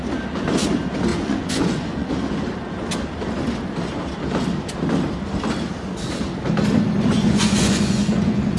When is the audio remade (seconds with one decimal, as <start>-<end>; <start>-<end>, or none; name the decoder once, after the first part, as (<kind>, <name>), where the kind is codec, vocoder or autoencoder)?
1.1-2.1 (vocoder, Vocos); 7.1-8.6